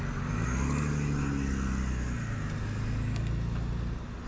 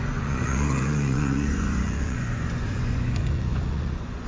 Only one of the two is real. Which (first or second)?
first